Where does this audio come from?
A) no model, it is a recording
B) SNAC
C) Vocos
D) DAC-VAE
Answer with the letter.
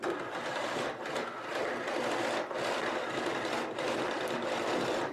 A